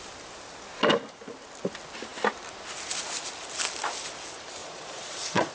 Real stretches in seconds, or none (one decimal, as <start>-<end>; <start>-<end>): 0.0-4.6

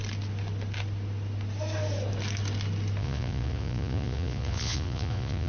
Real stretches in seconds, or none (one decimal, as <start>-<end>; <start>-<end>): 0.0-3.0

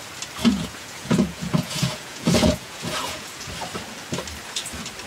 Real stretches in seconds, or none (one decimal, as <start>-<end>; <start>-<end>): 0.0-0.4; 3.5-5.1